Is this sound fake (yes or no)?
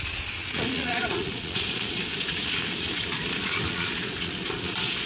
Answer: yes